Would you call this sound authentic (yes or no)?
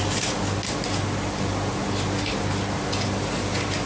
yes